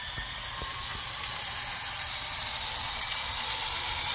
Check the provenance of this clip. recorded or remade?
remade